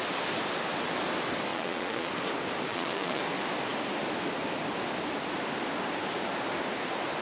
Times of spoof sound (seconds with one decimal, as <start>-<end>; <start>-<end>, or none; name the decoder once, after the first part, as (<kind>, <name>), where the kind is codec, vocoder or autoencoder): 1.5-2.1 (vocoder, Vocos); 2.7-3.2